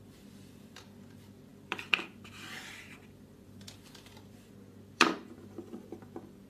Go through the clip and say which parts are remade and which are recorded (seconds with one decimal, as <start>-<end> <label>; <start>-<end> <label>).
0.0-6.5 remade